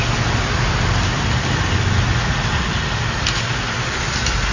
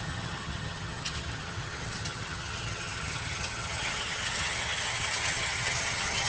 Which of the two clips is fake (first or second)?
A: second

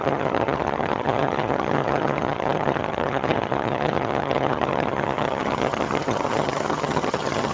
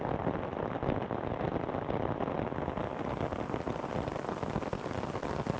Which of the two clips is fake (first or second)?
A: first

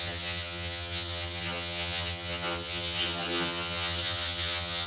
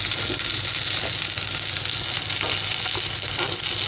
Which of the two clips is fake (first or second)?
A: first